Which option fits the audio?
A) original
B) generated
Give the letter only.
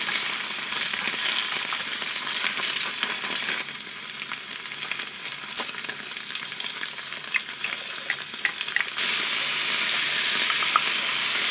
A